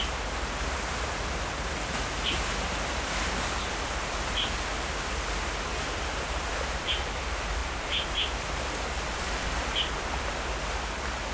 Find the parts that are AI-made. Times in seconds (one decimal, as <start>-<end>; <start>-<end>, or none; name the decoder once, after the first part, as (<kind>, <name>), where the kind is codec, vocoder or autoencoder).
5.7-6.4 (vocoder, BigVGAN v2)